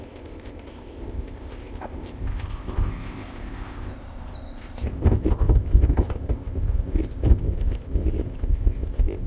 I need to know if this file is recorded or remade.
remade